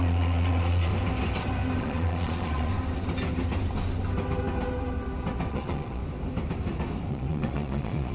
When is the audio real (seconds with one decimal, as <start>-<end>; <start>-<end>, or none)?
0.9-1.8; 2.7-5.5; 6.0-7.1